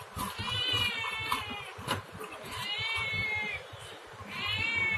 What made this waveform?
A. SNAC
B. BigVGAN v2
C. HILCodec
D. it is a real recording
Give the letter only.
B